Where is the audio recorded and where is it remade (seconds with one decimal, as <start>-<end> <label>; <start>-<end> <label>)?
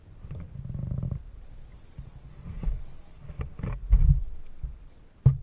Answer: 0.0-5.4 recorded